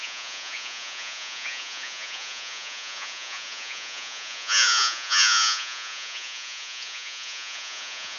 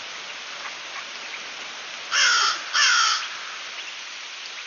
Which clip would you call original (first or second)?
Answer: second